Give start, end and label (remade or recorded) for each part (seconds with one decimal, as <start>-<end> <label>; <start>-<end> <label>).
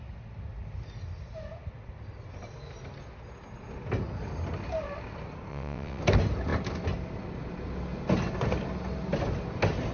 0.0-5.5 recorded; 5.5-6.0 remade; 6.0-9.9 recorded